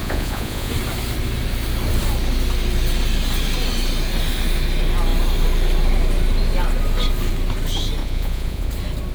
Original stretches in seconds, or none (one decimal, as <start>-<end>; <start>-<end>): 0.7-8.0; 8.7-9.1